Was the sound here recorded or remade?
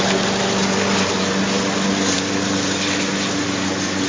recorded